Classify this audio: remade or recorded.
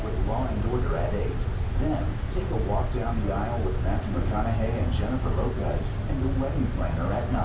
recorded